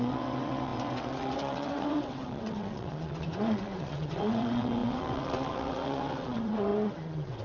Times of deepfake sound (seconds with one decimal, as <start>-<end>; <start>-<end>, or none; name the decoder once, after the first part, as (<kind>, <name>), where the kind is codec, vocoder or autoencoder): 0.0-7.4 (vocoder, WaveNeXt)